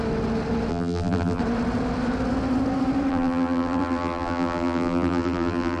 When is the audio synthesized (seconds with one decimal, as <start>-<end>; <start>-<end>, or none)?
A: 0.7-1.4; 3.1-5.8